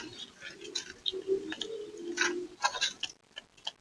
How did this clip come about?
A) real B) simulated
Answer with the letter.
A